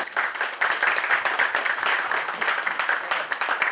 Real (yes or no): yes